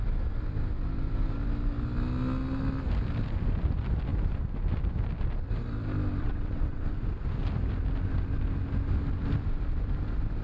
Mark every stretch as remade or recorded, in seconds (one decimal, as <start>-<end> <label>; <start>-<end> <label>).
0.0-6.2 recorded; 6.2-6.9 remade; 6.9-10.4 recorded